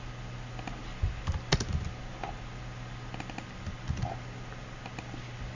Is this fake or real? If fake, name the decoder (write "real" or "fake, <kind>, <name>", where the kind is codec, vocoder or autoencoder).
real